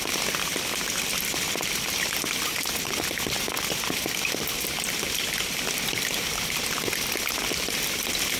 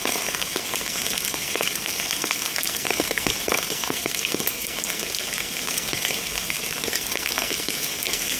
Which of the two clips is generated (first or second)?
second